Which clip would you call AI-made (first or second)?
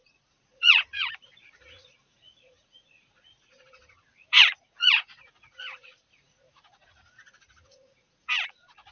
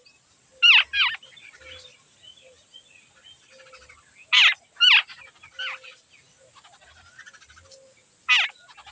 first